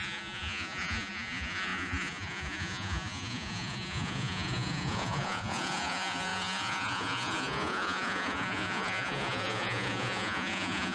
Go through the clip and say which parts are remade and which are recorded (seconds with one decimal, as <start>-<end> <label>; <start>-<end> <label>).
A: 0.0-10.9 remade